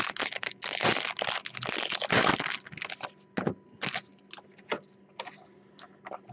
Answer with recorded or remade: recorded